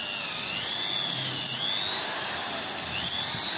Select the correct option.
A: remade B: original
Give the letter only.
B